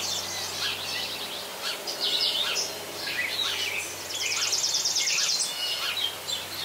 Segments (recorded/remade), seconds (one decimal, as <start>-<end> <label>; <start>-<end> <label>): 0.0-1.5 recorded; 1.5-4.1 remade; 4.1-6.6 recorded